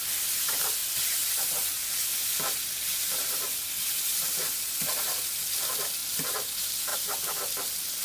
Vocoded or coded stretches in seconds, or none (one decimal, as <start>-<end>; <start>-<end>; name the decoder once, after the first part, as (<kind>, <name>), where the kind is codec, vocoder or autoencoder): 6.9-7.4 (vocoder, BigVGAN v2)